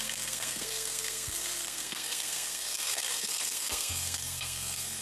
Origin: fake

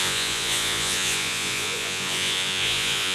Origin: fake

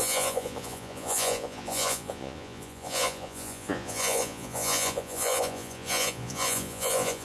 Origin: fake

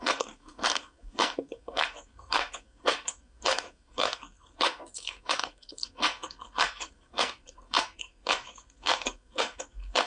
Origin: fake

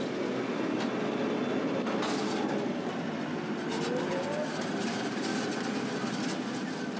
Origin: real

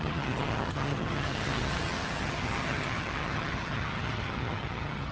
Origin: fake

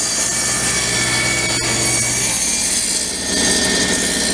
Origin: real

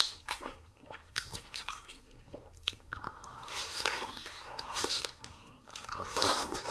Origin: fake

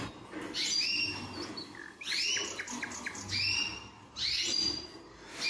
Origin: real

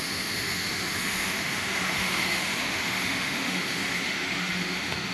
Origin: fake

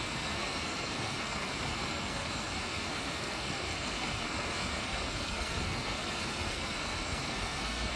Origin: fake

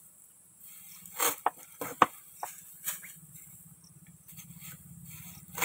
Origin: real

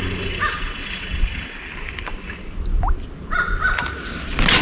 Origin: real